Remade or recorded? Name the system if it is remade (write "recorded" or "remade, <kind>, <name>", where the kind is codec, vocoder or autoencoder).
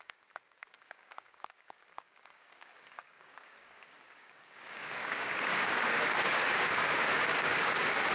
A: remade, codec, DAC